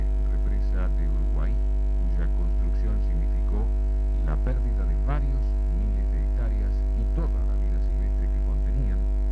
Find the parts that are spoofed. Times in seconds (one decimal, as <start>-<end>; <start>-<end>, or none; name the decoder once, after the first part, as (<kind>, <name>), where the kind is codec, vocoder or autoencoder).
none